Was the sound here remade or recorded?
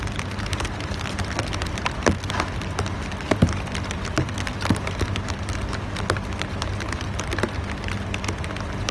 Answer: recorded